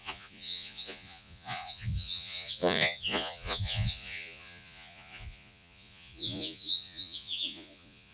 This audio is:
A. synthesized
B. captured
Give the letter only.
A